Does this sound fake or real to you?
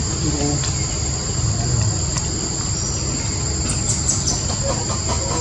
real